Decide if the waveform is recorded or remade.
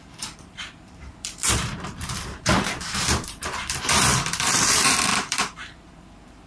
remade